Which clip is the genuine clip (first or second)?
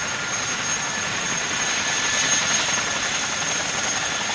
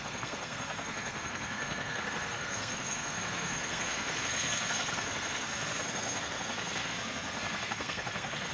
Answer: first